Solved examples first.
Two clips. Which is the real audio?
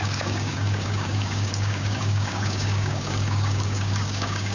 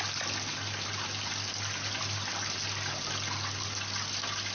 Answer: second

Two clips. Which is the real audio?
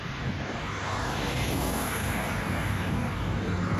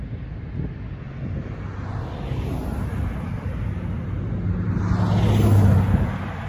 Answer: second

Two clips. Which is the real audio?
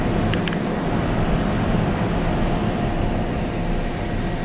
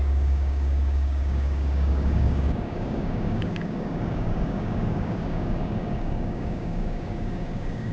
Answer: first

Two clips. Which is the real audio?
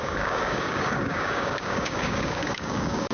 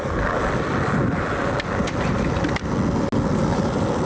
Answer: second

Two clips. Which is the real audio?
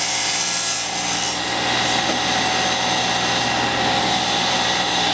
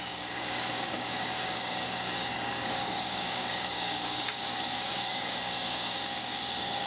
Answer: first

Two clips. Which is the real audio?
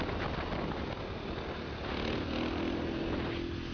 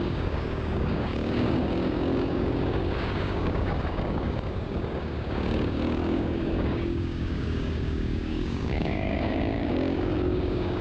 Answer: first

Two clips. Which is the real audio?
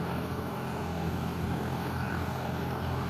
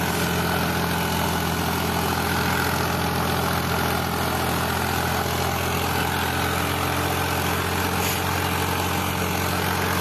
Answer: second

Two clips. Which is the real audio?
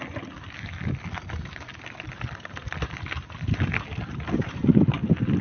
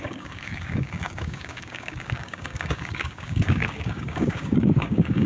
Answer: first